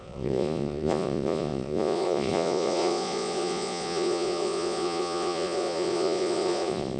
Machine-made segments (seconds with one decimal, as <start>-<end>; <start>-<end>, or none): 0.0-7.0